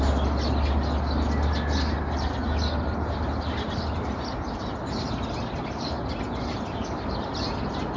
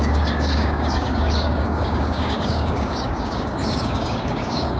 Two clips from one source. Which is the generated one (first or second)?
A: second